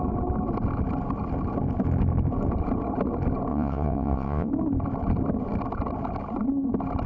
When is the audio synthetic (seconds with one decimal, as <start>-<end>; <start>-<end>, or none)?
3.5-4.5